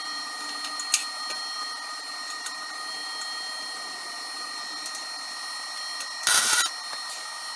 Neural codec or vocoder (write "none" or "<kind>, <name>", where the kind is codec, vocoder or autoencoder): none